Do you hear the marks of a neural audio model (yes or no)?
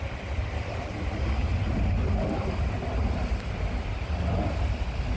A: no